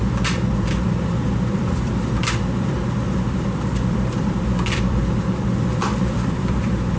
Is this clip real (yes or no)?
no